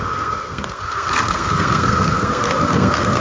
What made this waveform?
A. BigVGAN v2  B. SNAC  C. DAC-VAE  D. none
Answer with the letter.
B